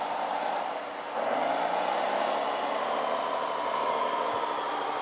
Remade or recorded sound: recorded